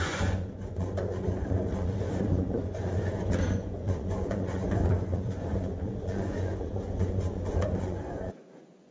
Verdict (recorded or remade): remade